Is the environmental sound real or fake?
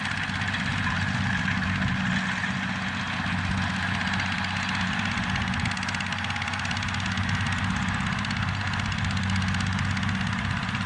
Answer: real